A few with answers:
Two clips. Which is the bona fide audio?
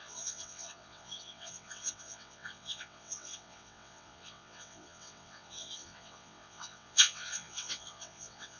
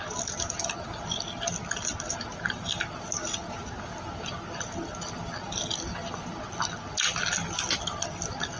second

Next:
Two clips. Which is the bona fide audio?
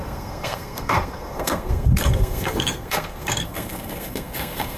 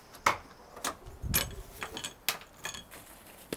second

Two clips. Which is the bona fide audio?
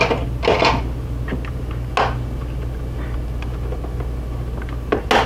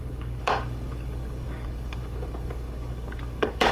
first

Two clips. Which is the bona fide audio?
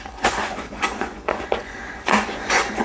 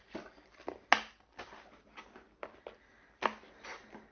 second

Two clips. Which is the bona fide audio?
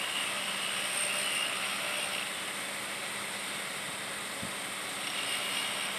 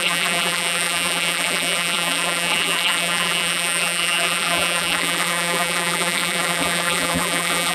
first